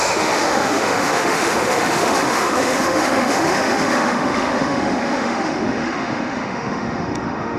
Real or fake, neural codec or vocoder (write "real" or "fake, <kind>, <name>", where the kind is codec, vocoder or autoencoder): fake, autoencoder, DAC-VAE